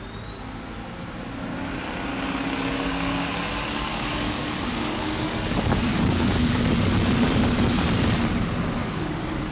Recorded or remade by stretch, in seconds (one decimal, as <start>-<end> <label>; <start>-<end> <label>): 0.0-2.1 recorded; 2.1-3.3 remade; 3.3-3.9 recorded; 3.9-6.7 remade; 6.7-8.8 recorded; 8.8-9.5 remade